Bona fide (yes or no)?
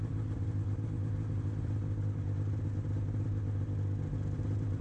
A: yes